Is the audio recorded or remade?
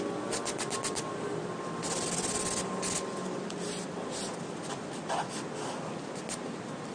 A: recorded